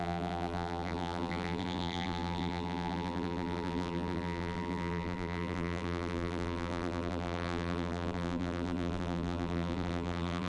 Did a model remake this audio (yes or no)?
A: yes